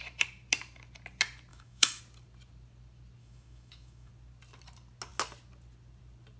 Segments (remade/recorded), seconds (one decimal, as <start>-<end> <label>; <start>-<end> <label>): 0.0-1.5 recorded; 1.5-2.0 remade; 2.0-3.2 recorded; 3.2-4.1 remade; 4.1-6.4 recorded